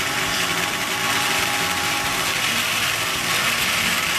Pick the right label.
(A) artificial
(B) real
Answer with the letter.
A